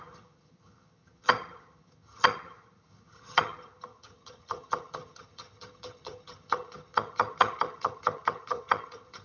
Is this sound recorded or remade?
remade